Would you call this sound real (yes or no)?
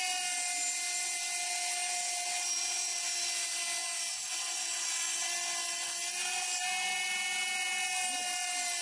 yes